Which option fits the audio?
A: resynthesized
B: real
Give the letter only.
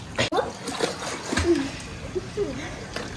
B